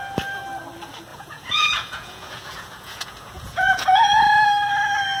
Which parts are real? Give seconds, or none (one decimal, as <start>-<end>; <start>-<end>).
0.0-1.1; 4.2-5.2